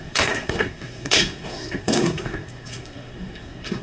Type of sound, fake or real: fake